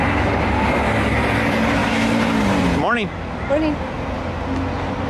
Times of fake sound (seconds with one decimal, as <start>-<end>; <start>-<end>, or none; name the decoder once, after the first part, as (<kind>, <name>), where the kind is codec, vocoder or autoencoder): none